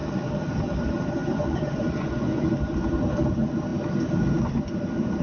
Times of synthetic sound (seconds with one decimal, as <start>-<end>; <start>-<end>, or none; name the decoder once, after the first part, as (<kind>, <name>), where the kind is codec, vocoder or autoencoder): 1.2-2.5 (vocoder, Vocos)